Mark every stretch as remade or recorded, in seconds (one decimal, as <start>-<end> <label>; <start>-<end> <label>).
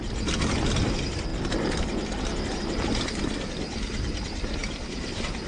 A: 0.0-5.5 recorded